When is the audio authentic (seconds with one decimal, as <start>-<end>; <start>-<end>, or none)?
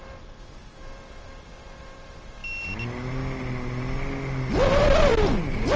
2.4-4.5